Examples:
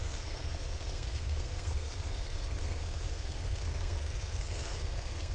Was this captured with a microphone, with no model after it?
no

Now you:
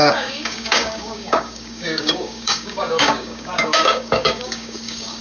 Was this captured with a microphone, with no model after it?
no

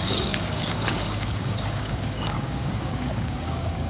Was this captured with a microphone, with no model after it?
no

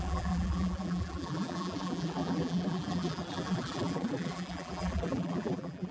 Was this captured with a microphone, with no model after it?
no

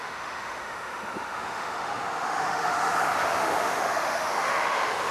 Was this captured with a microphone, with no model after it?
no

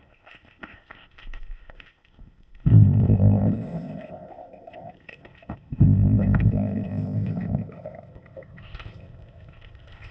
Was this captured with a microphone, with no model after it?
no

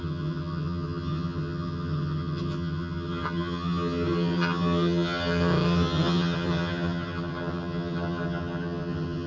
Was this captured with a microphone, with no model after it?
no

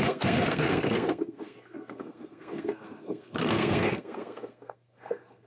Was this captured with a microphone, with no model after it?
no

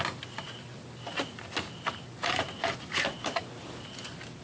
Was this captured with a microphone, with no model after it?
yes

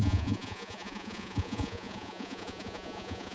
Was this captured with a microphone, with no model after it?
no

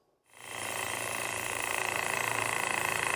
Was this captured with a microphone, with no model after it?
no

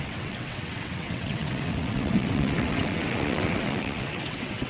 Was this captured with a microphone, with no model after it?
no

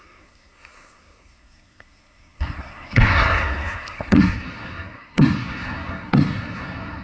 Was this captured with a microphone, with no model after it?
no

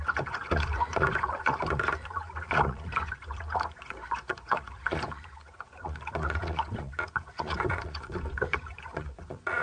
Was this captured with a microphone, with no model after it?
no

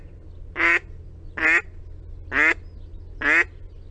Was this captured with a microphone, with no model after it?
yes